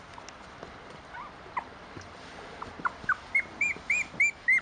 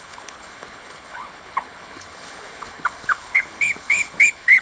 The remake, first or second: second